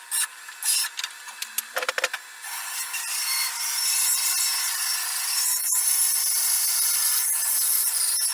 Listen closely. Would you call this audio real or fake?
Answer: real